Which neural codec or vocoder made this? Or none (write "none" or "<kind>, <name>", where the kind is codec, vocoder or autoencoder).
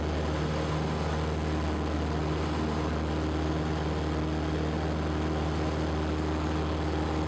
none